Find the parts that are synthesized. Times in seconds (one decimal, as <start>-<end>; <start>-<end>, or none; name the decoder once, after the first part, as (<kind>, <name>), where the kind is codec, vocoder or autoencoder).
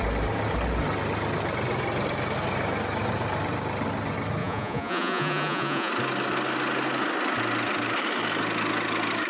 4.4-5.9 (vocoder, Vocos)